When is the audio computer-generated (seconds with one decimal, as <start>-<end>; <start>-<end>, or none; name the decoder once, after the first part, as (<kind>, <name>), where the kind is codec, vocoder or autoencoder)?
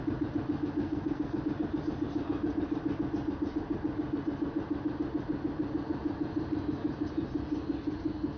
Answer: 0.8-1.4 (codec, SNAC)